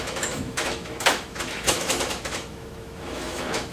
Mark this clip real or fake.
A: fake